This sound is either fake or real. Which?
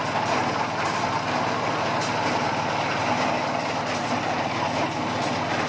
real